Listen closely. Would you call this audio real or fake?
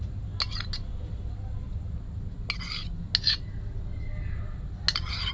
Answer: real